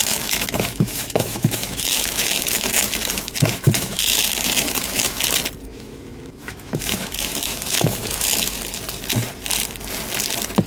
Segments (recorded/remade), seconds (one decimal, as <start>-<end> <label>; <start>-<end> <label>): 0.0-5.2 remade; 5.2-5.7 recorded; 5.7-8.6 remade; 8.6-10.7 recorded